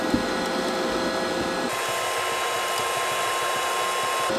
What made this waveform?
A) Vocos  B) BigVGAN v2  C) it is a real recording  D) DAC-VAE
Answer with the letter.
C